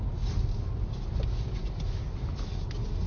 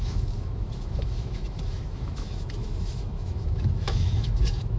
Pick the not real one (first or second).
second